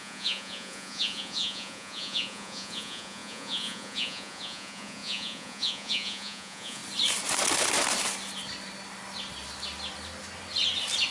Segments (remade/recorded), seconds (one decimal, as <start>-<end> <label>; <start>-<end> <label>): 0.0-6.8 remade; 6.8-11.1 recorded